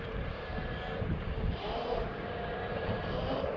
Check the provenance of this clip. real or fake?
fake